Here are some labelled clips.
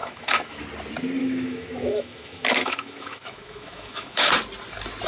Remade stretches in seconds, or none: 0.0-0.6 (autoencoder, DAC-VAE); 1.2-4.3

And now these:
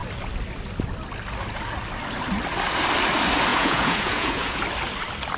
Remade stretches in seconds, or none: 3.5-4.6 (vocoder, Vocos)

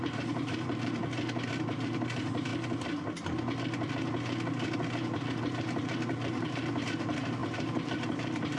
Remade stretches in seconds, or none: 0.0-1.0 (vocoder, BigVGAN v2); 1.5-2.5; 5.4-8.6